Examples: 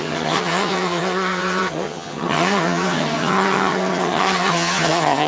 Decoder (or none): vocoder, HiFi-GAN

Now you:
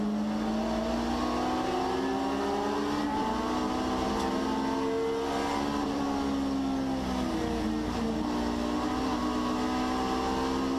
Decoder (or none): none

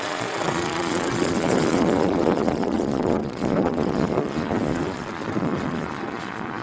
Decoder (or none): vocoder, Vocos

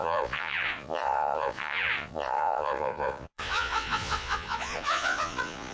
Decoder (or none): vocoder, Vocos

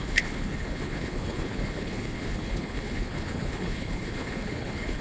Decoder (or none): codec, HILCodec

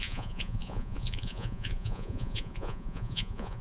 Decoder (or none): vocoder, Vocos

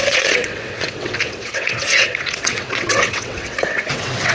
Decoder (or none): vocoder, WaveNeXt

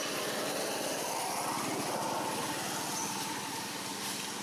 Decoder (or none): none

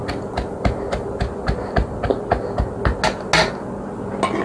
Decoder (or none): none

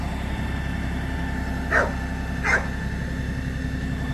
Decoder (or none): none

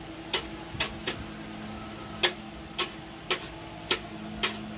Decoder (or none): none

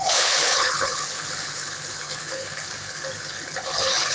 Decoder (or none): codec, HILCodec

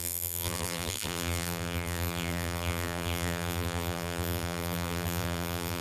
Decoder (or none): vocoder, BigVGAN v2